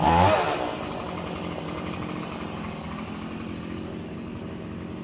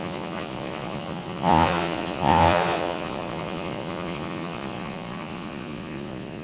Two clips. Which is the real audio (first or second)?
first